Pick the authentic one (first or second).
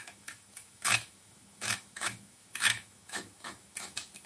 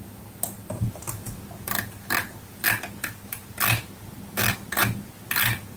second